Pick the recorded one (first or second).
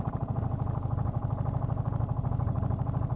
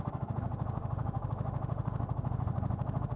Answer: first